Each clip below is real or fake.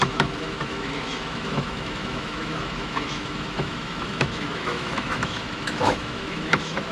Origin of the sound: fake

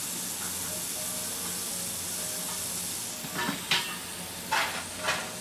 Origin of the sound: real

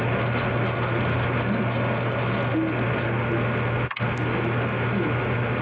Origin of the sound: real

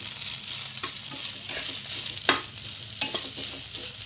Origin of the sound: real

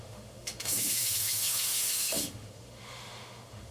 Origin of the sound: fake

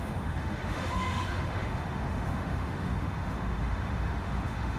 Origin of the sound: fake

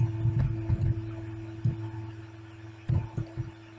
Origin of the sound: real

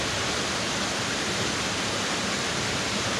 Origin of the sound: real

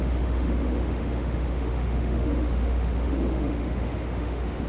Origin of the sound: fake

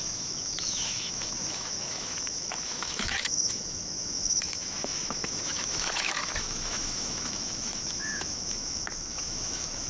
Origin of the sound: fake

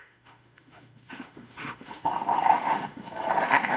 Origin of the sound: fake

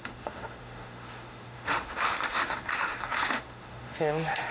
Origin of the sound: fake